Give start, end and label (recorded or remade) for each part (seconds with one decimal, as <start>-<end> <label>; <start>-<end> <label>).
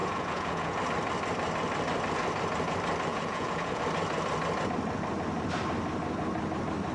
0.0-0.8 remade; 0.8-3.1 recorded; 3.1-3.8 remade; 3.8-6.9 recorded